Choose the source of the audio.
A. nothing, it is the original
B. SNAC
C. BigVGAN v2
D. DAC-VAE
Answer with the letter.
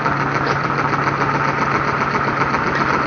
A